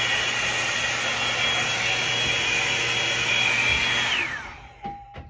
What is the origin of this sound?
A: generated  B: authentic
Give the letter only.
B